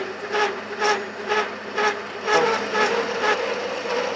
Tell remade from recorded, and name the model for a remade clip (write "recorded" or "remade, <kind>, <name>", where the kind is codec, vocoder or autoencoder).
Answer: recorded